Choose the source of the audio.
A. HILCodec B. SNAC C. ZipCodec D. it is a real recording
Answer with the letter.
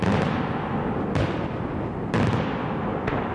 D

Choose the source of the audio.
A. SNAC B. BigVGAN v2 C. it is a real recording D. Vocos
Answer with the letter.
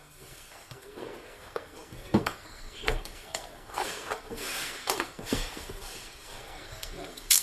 A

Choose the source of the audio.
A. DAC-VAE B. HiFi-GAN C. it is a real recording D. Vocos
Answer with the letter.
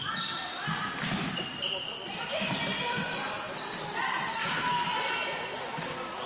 C